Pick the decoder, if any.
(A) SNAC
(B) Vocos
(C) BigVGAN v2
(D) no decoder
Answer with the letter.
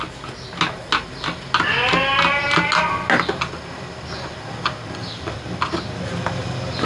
D